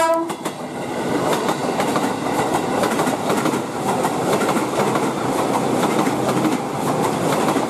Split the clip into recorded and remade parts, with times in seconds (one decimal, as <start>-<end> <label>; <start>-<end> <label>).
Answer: 0.0-7.7 remade